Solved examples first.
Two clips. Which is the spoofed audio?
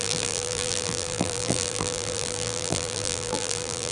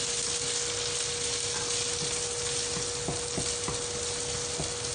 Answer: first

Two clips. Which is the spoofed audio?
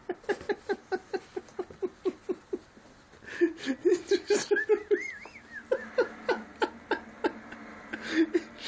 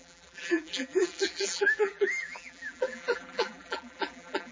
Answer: second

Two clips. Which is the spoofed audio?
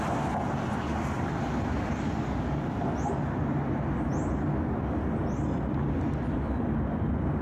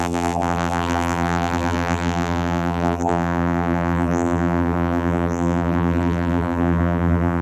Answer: second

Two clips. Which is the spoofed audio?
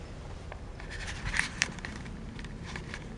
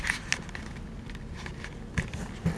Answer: first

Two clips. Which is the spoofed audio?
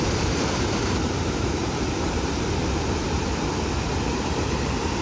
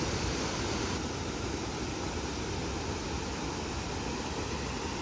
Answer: first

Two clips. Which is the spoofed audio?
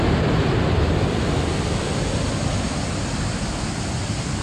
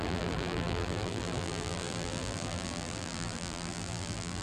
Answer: second